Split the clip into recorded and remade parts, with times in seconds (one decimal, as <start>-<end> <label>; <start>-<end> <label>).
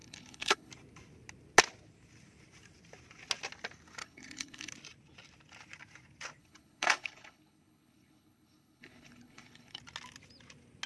0.0-0.7 remade; 0.7-4.0 recorded; 4.0-4.7 remade; 4.7-6.4 recorded; 6.4-9.8 remade; 9.8-10.9 recorded